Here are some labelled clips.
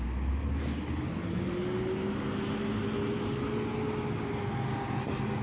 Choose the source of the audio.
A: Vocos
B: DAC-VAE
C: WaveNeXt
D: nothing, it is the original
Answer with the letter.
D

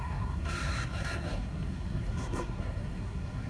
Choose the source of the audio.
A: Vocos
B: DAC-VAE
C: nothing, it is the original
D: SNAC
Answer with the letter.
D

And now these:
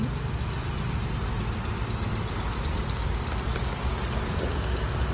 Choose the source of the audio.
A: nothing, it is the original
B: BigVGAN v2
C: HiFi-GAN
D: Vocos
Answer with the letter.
A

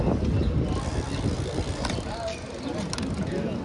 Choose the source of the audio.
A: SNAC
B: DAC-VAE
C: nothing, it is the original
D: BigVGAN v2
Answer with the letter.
C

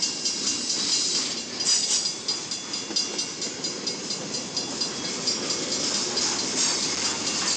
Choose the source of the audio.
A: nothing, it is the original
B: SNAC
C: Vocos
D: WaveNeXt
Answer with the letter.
A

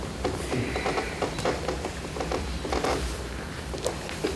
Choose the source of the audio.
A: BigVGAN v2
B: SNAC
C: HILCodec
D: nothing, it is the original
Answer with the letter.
D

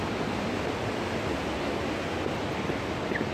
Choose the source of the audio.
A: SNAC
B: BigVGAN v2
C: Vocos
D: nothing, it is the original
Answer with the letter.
D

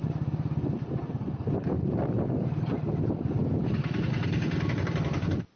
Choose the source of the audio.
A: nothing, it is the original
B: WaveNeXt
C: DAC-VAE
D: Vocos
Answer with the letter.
A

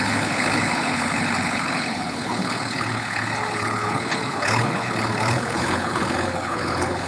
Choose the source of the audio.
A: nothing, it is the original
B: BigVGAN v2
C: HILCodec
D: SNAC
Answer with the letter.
C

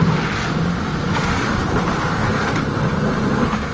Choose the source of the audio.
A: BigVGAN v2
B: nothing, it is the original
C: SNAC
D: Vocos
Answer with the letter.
A